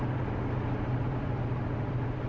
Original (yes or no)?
no